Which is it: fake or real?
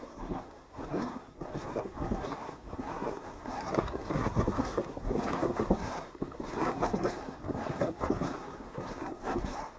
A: fake